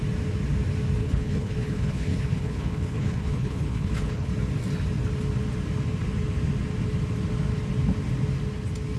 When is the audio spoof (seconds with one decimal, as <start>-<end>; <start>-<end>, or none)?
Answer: 1.0-4.3